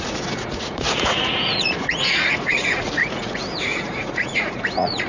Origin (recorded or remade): remade